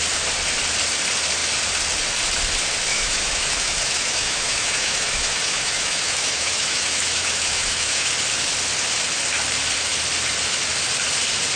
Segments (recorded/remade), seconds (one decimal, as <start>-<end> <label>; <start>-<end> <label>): 0.0-2.9 recorded; 2.9-8.1 remade; 8.1-11.6 recorded

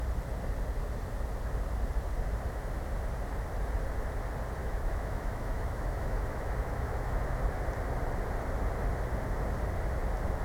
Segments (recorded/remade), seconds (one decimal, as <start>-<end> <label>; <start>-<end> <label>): 0.0-4.6 recorded; 4.6-7.2 remade; 7.2-10.4 recorded

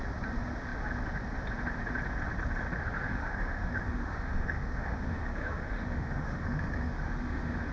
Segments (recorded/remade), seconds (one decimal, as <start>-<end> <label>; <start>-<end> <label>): 0.0-2.8 recorded; 2.8-7.7 remade

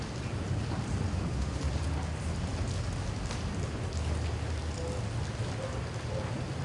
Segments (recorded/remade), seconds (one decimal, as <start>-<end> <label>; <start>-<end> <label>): 0.0-1.1 recorded; 1.1-1.6 remade; 1.6-6.6 recorded

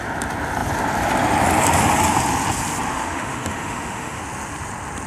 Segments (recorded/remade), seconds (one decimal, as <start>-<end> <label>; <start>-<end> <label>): 0.0-2.9 recorded; 2.9-4.2 remade; 4.2-5.1 recorded